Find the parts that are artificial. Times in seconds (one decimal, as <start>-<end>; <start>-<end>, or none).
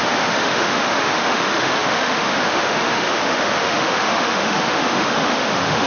0.0-5.9